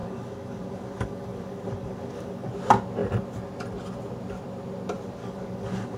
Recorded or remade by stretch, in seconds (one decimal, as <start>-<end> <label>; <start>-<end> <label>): 0.0-2.5 remade; 2.5-5.2 recorded; 5.2-6.0 remade